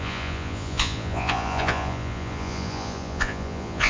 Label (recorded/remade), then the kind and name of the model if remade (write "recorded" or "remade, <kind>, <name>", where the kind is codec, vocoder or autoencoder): remade, vocoder, Vocos